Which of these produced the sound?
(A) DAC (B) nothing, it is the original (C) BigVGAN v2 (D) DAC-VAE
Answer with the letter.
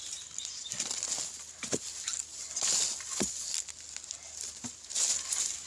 B